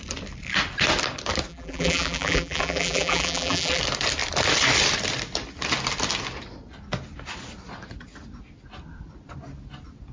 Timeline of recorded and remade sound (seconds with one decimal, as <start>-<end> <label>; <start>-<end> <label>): 0.0-1.5 recorded; 1.5-3.8 remade; 3.8-10.1 recorded